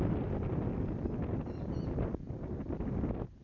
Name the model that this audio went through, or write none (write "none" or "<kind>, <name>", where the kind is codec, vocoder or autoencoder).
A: none